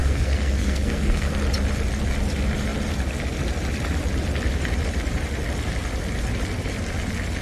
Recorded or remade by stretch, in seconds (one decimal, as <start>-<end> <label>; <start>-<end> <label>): 0.0-1.3 remade; 1.3-7.4 recorded